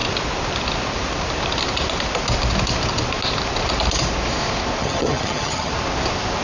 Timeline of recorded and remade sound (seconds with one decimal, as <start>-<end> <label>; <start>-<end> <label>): 0.0-4.8 recorded; 4.8-5.7 remade; 5.7-6.4 recorded